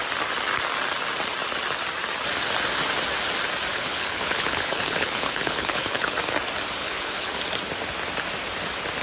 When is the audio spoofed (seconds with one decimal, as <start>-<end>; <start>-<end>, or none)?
3.7-6.2; 6.8-7.4